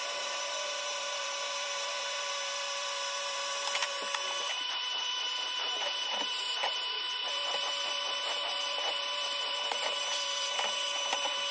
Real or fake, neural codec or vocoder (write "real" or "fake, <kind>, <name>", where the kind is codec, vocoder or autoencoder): fake, vocoder, BigVGAN v2